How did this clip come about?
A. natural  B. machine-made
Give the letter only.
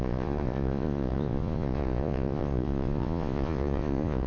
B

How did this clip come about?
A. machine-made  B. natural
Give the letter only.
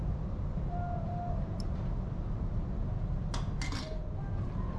B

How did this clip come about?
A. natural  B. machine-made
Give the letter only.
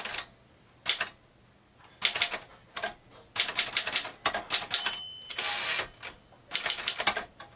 A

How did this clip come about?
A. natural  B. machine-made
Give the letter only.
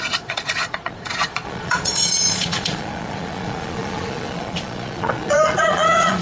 B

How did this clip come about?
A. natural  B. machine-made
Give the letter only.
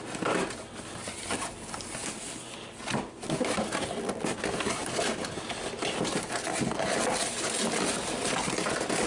A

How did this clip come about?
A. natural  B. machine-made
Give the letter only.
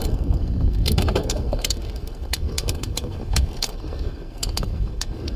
B